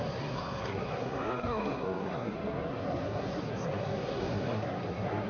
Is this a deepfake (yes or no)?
yes